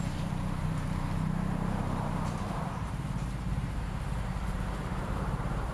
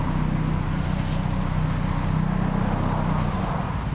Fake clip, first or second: first